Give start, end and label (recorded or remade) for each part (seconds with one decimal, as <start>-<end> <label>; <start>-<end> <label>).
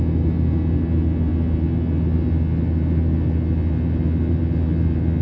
0.0-5.2 recorded